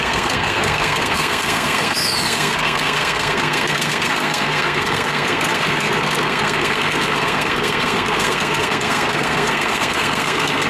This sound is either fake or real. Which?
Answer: fake